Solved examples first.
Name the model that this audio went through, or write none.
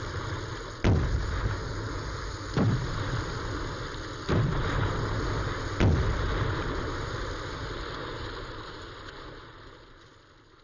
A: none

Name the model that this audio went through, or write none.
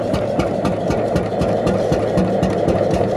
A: vocoder, BigVGAN v2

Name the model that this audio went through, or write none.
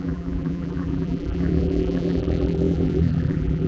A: vocoder, BigVGAN v2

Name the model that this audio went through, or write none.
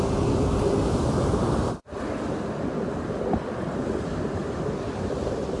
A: none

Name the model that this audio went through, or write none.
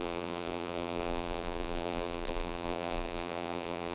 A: vocoder, BigVGAN v2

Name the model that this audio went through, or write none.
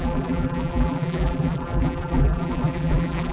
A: vocoder, BigVGAN v2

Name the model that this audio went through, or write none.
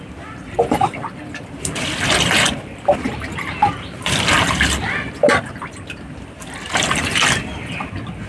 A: vocoder, BigVGAN v2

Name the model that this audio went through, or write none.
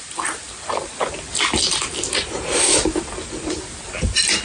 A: vocoder, BigVGAN v2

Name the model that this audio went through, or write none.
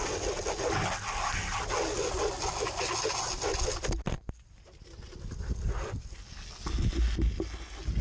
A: none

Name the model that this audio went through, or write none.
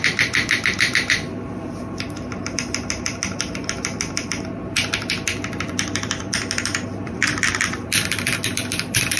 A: vocoder, BigVGAN v2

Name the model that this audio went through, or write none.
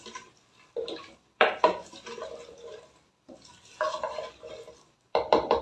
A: vocoder, BigVGAN v2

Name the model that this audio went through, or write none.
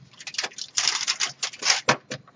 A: none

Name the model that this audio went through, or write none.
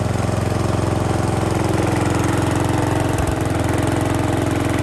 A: none